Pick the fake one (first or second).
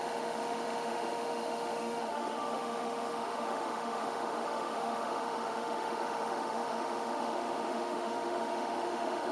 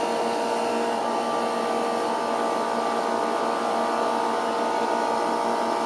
first